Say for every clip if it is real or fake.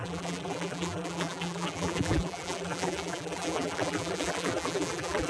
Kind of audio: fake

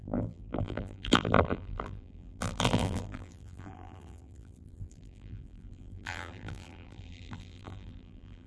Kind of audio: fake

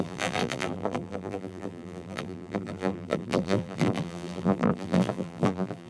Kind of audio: fake